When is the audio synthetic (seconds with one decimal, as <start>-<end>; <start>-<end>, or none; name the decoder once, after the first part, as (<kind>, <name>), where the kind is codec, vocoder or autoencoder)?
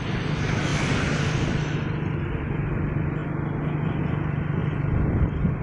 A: none